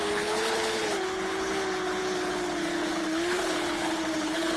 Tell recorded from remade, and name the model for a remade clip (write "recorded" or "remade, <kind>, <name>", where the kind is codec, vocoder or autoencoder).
remade, codec, HILCodec